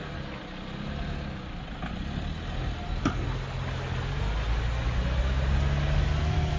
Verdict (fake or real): real